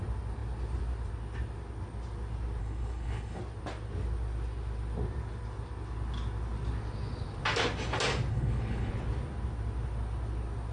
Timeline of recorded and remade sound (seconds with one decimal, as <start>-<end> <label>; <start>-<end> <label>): 0.0-2.6 recorded; 2.6-3.4 remade; 3.4-8.3 recorded; 8.3-8.9 remade; 8.9-10.7 recorded